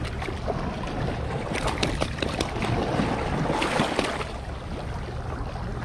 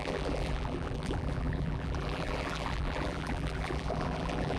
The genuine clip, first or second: first